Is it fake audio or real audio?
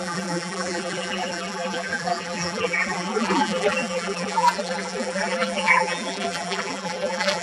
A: fake